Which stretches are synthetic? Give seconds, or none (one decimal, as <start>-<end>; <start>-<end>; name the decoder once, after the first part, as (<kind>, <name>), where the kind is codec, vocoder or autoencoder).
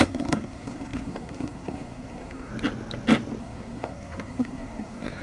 0.0-2.5 (codec, SNAC); 3.4-5.2